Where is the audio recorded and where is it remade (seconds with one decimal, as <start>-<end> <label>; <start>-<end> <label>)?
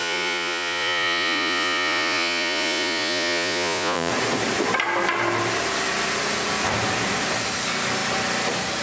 0.0-4.1 remade; 4.1-8.8 recorded